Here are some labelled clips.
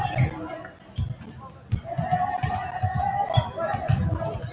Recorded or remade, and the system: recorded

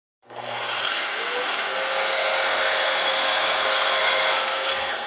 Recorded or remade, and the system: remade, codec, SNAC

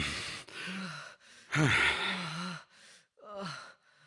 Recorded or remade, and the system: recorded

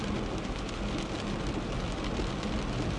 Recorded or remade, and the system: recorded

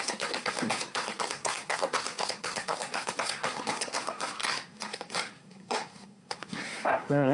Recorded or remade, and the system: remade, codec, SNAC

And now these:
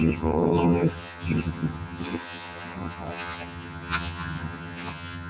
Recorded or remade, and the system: remade, vocoder, HiFi-GAN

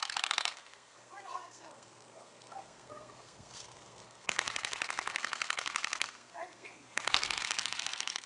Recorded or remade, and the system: remade, codec, SNAC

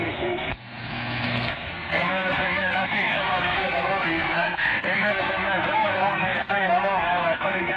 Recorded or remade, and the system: remade, codec, SNAC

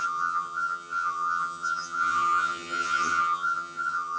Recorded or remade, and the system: remade, vocoder, HiFi-GAN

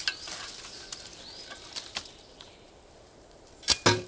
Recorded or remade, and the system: recorded